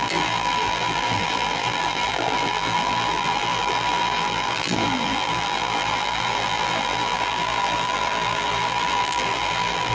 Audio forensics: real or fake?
fake